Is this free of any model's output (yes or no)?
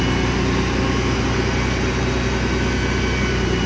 yes